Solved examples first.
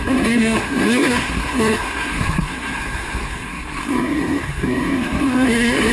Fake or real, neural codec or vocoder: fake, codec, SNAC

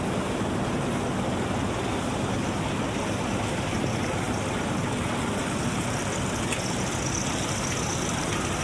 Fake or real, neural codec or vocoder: real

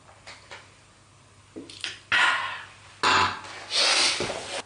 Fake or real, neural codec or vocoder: real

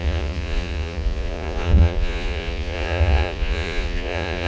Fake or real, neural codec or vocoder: fake, vocoder, Vocos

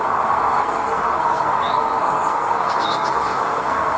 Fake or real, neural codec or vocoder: fake, codec, SNAC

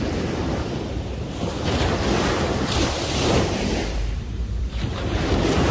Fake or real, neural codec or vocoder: fake, vocoder, BigVGAN v2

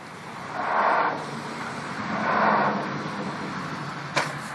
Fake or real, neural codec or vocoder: real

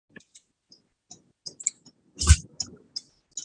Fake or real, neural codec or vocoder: real